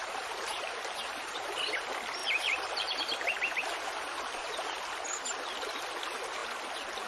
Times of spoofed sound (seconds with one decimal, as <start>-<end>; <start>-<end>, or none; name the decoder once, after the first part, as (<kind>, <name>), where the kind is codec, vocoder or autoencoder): 0.0-1.6 (vocoder, BigVGAN v2); 2.2-4.8